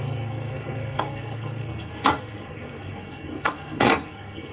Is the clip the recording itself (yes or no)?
no